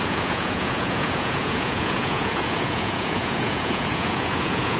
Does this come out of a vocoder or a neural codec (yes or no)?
yes